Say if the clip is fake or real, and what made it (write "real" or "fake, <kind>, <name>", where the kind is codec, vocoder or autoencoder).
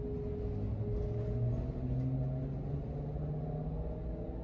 real